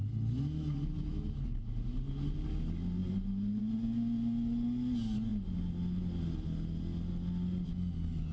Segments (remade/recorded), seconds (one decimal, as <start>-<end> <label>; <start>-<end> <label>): 0.0-8.3 recorded